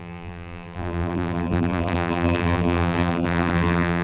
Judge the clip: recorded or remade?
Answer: remade